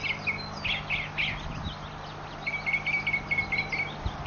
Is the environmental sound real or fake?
real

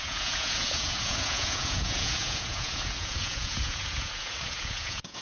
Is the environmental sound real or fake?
fake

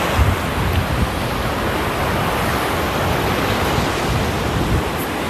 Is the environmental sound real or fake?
real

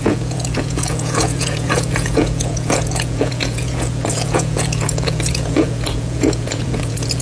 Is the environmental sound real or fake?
fake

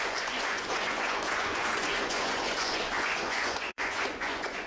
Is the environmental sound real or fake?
fake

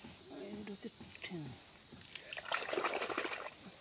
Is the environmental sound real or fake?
real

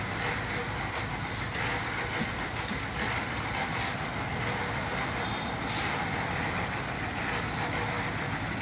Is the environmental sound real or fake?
real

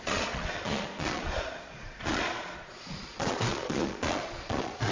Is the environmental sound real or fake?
fake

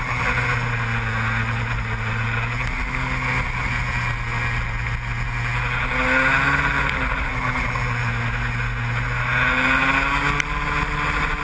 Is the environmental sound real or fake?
real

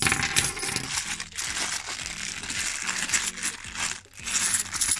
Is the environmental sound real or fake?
real